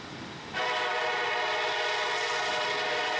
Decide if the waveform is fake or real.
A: real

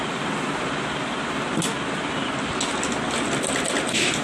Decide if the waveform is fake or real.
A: real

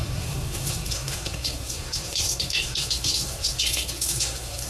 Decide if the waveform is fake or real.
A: fake